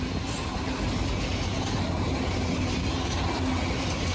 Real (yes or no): yes